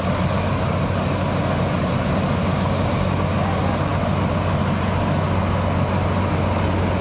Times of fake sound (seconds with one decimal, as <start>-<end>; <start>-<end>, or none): none